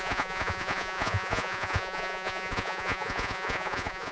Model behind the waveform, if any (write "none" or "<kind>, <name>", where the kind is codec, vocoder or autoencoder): vocoder, Vocos